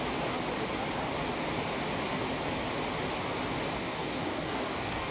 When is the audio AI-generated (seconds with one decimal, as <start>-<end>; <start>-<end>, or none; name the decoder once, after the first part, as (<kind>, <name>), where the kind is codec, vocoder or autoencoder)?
3.8-5.1 (codec, DAC)